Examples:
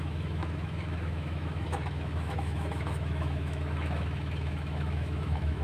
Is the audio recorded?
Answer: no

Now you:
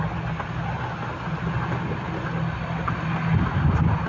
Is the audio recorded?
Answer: yes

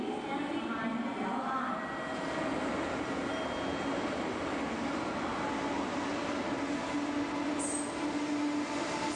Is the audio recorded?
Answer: yes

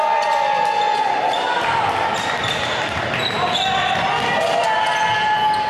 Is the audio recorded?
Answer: yes